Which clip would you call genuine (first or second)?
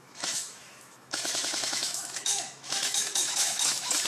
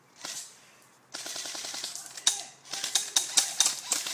second